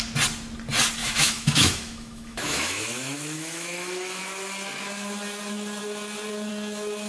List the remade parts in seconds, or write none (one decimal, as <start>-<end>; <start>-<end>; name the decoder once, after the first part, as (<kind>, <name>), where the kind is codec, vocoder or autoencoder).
1.0-4.2 (autoencoder, DAC-VAE)